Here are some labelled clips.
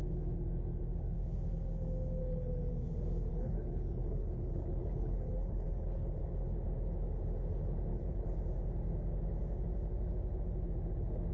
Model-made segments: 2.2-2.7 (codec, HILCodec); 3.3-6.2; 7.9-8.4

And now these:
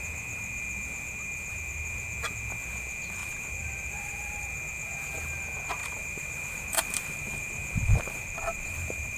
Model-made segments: 3.2-4.4 (vocoder, BigVGAN v2); 5.8-9.2

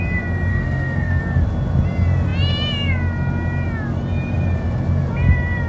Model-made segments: 0.5-1.2 (codec, SNAC)

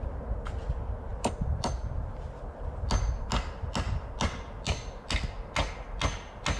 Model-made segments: 1.1-2.0 (vocoder, BigVGAN v2)

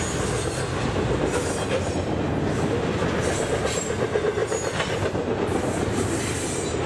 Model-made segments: none

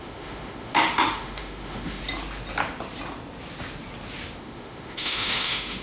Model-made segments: 0.0-2.0 (autoencoder, DAC-VAE); 4.4-5.8